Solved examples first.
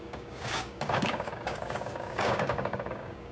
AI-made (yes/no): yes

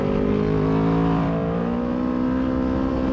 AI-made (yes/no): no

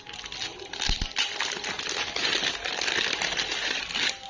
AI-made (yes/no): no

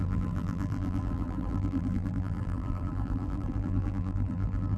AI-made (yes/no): yes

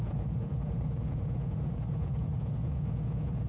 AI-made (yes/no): yes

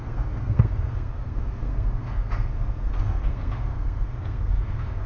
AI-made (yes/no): yes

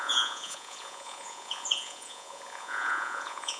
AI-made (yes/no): yes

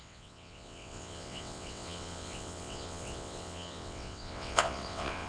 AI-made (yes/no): yes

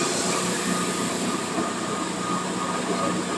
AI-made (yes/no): no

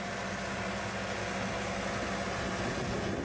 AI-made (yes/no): no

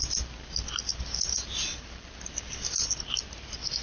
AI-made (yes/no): no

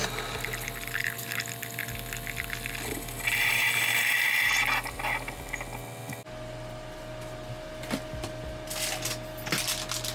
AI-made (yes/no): no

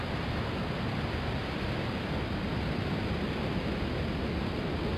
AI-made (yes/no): no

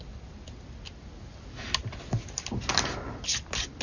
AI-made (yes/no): no